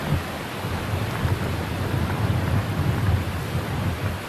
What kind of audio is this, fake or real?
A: real